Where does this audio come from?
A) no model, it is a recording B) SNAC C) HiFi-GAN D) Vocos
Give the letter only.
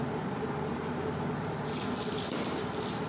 A